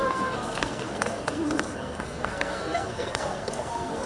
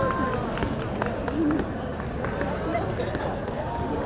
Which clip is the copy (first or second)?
first